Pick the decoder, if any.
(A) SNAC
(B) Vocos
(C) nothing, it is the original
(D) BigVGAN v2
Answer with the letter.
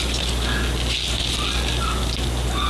C